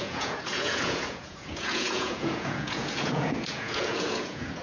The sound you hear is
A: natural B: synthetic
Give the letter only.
B